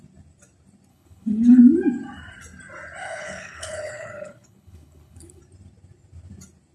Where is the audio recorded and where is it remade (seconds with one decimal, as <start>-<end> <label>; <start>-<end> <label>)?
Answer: 0.0-0.9 recorded; 0.9-1.6 remade; 1.6-3.0 recorded; 3.0-5.4 remade; 5.4-6.7 recorded